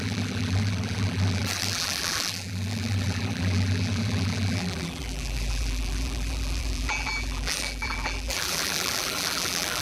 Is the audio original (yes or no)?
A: no